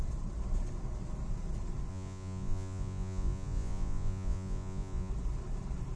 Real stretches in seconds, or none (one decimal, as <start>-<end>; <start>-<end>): 0.0-1.9; 5.1-6.0